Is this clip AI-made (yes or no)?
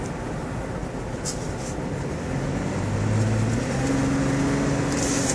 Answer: no